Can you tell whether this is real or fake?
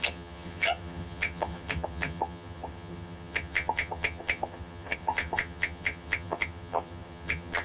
fake